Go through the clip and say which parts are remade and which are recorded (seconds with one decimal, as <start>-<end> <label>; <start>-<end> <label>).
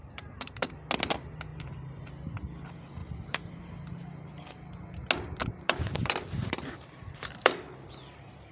0.0-0.7 remade; 0.7-3.0 recorded; 3.0-3.6 remade; 3.6-5.4 recorded; 5.4-7.9 remade; 7.9-8.5 recorded